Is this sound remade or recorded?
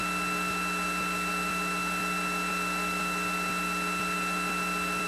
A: recorded